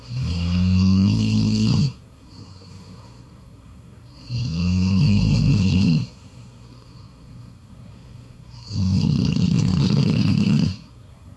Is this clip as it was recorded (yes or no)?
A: no